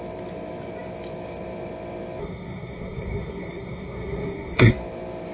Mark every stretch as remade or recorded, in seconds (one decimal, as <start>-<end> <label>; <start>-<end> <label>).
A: 0.0-2.2 recorded; 2.2-4.7 remade; 4.7-5.3 recorded